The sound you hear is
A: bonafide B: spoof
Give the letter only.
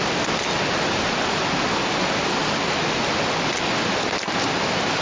A